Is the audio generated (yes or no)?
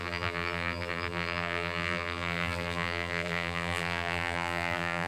yes